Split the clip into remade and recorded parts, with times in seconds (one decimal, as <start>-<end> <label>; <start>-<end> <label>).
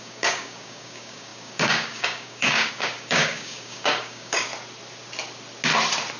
0.0-4.5 remade; 4.5-6.2 recorded